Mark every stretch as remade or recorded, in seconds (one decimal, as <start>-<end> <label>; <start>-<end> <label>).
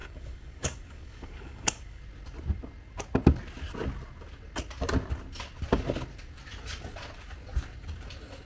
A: 0.0-2.0 remade; 2.0-8.4 recorded